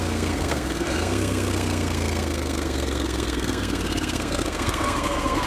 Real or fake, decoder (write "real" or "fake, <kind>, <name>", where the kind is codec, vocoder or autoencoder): fake, codec, SNAC